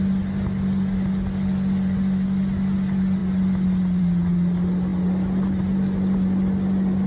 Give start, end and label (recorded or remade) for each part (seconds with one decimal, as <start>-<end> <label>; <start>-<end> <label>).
0.0-7.1 recorded